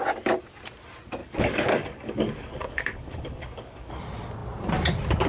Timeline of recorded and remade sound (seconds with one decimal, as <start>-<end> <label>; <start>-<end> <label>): 0.0-1.2 recorded; 1.2-4.0 remade; 4.0-5.3 recorded